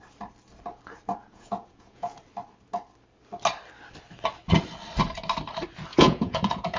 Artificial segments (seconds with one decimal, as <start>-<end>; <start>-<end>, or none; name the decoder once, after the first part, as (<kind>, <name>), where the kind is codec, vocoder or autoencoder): 1.1-2.2 (vocoder, Vocos); 5.9-6.8